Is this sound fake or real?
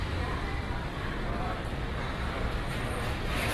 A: fake